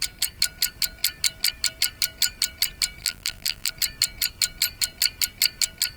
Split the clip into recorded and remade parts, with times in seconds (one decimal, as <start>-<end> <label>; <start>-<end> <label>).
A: 0.0-3.0 recorded; 3.0-3.7 remade; 3.7-6.0 recorded